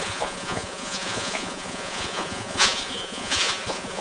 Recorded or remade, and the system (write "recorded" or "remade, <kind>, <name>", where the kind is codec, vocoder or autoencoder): remade, vocoder, Vocos